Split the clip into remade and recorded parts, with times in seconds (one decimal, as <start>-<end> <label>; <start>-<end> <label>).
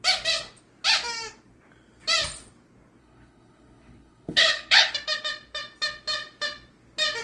0.0-3.0 recorded; 3.0-4.9 remade; 4.9-7.2 recorded